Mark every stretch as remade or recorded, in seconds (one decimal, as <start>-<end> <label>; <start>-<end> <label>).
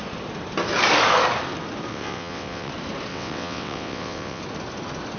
0.0-1.9 recorded; 1.9-2.7 remade; 2.7-3.1 recorded; 3.1-4.4 remade; 4.4-5.2 recorded